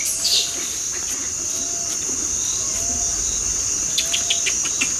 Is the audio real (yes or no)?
yes